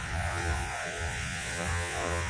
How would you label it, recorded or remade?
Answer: remade